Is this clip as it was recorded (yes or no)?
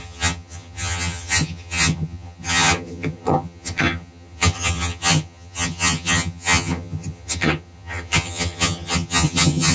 no